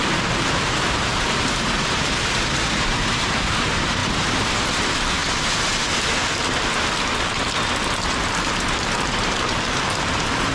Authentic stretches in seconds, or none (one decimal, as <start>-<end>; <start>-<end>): 5.2-8.2